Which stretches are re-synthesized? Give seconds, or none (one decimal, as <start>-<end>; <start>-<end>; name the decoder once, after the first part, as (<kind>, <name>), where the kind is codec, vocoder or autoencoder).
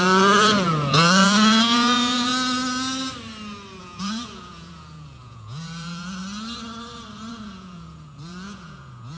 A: 0.0-2.3 (vocoder, Vocos); 3.8-6.2; 7.3-9.2